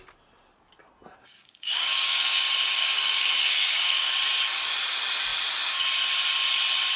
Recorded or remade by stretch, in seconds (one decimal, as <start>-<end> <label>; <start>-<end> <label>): 0.0-1.2 recorded; 1.2-2.4 remade; 2.4-2.8 recorded; 2.8-4.1 remade; 4.1-7.0 recorded